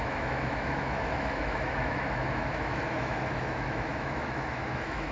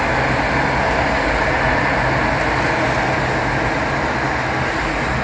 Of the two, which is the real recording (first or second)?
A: second